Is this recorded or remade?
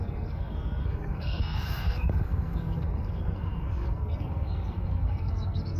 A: remade